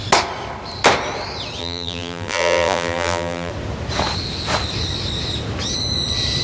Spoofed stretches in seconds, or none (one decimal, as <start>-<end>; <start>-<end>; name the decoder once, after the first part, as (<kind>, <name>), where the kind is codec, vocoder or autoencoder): 1.6-3.5 (vocoder, BigVGAN v2)